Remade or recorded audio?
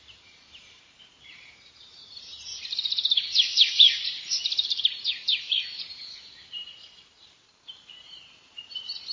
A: remade